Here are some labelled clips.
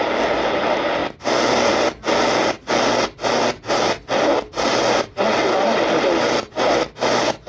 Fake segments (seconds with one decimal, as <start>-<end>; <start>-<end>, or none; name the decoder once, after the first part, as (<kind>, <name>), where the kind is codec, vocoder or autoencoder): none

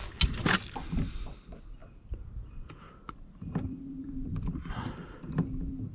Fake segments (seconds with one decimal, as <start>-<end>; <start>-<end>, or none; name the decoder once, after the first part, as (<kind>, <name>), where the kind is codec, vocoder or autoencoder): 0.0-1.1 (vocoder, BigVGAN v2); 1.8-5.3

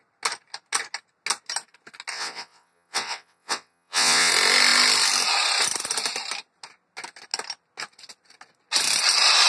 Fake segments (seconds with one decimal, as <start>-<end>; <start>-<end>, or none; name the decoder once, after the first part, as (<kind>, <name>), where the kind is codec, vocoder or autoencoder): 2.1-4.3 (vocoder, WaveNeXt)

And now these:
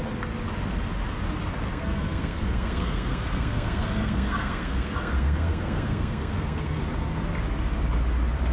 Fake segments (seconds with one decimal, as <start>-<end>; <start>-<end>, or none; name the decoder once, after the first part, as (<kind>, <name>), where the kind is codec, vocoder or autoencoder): 1.7-6.8 (codec, SNAC)

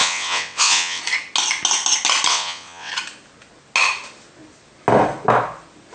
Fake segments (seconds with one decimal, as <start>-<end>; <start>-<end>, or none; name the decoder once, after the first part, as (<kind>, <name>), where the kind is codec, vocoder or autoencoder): 0.0-1.0 (vocoder, WaveNeXt); 2.3-2.9

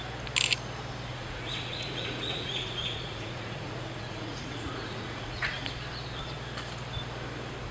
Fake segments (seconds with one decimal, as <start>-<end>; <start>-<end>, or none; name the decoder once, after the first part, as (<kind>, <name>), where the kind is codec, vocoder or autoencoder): 1.1-5.7 (vocoder, Vocos)

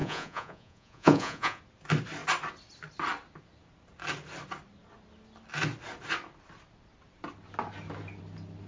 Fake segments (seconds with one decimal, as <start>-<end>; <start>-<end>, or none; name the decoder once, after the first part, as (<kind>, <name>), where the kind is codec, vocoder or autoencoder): 0.0-1.6 (vocoder, Vocos)

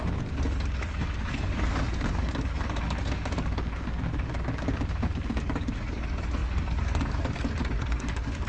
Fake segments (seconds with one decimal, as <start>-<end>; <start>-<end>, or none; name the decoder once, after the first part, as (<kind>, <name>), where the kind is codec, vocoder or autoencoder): 0.0-8.5 (codec, DAC)